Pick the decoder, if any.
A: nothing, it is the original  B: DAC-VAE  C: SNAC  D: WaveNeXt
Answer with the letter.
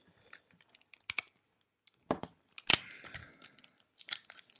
A